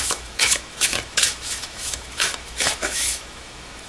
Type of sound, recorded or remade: remade